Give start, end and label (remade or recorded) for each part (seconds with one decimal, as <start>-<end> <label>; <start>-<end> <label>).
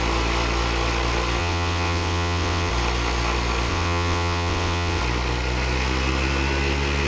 0.0-1.4 recorded; 1.4-2.7 remade; 2.7-3.7 recorded; 3.7-5.0 remade; 5.0-7.1 recorded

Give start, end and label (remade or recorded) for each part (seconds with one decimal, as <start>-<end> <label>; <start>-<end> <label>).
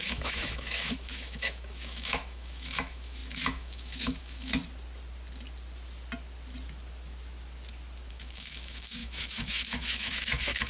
0.0-4.6 remade; 4.6-8.1 recorded; 8.1-10.7 remade